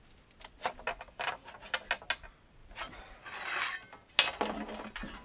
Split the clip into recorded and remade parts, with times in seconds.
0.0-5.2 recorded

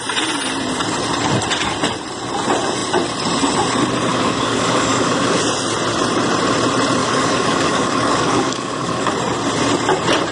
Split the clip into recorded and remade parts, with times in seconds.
0.0-4.1 recorded; 4.1-5.4 remade; 5.4-7.0 recorded; 7.0-9.1 remade; 9.1-10.3 recorded

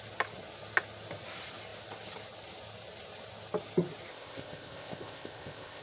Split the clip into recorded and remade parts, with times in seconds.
0.0-4.1 recorded; 4.1-5.8 remade

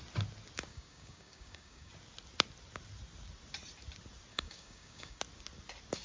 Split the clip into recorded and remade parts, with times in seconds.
0.0-0.7 recorded; 0.7-1.9 remade; 1.9-4.3 recorded; 4.3-5.2 remade; 5.2-6.0 recorded

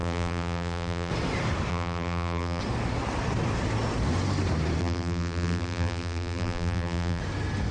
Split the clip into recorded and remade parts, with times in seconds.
0.0-1.1 remade; 1.1-1.7 recorded; 1.7-2.6 remade; 2.6-4.8 recorded; 4.8-7.2 remade; 7.2-7.7 recorded